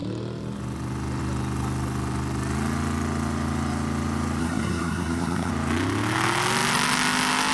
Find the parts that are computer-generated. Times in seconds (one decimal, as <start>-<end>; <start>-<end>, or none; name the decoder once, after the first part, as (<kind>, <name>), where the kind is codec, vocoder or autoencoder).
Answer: 4.4-5.5 (codec, SNAC)